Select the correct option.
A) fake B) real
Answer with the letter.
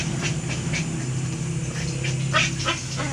B